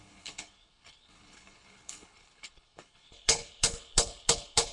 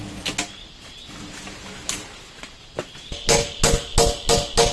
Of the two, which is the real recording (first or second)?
second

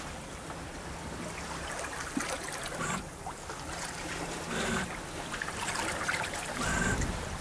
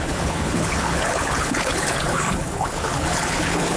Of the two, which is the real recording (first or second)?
first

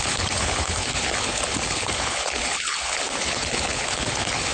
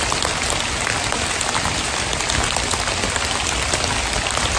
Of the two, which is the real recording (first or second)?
second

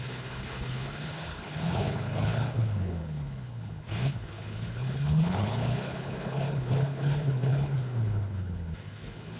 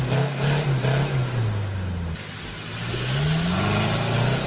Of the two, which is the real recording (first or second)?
second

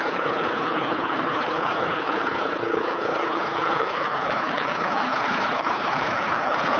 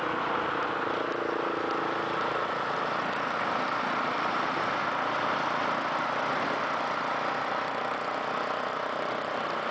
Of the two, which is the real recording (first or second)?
second